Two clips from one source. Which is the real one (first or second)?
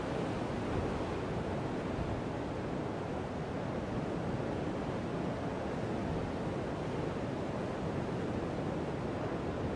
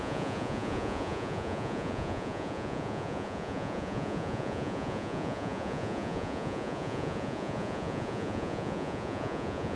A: first